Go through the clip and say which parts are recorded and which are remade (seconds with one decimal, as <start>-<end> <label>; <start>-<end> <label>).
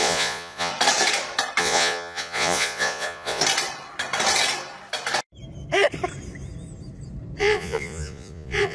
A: 0.0-0.7 remade; 0.7-1.6 recorded; 1.6-3.4 remade; 3.4-7.4 recorded; 7.4-8.7 remade